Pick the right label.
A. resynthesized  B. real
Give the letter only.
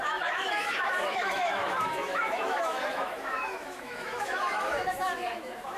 A